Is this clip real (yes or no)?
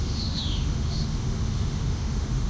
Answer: no